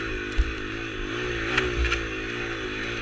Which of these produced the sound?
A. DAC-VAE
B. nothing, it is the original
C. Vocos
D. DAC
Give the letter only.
B